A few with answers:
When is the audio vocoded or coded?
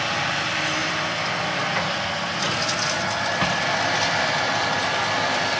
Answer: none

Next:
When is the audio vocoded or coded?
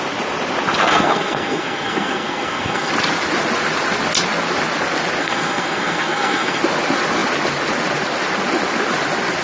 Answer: 0.8-2.9 (codec, SNAC); 5.2-6.6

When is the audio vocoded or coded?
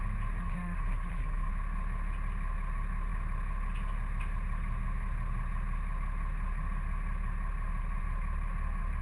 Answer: 0.4-1.5 (codec, SNAC)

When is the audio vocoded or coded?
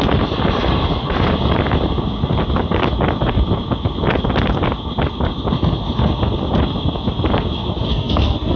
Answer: 7.9-8.6 (codec, SNAC)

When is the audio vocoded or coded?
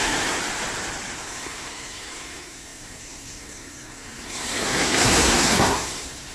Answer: 0.0-0.4 (codec, SNAC); 1.2-6.3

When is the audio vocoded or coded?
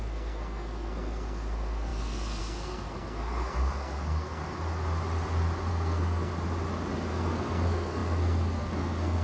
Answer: 0.0-4.4 (codec, SNAC); 5.7-6.3; 7.1-9.2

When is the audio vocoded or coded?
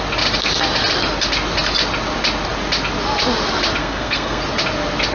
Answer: 3.8-4.4 (codec, SNAC)